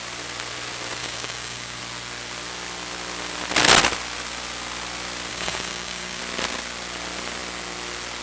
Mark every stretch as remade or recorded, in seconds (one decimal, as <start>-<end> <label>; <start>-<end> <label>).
0.0-1.0 recorded; 1.0-1.8 remade; 1.8-5.3 recorded; 5.3-6.2 remade; 6.2-8.2 recorded